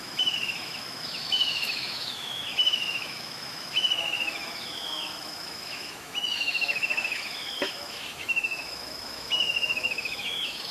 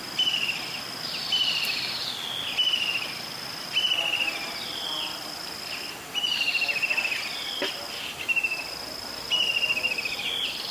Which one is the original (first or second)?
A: second